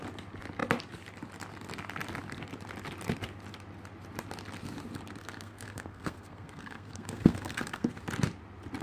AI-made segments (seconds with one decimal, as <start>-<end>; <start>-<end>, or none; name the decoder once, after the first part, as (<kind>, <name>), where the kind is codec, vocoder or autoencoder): 5.2-7.9 (codec, SNAC)